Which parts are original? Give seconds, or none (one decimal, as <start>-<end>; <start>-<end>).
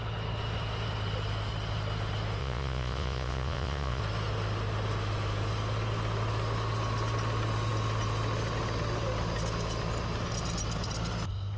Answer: 0.0-2.4; 4.0-11.6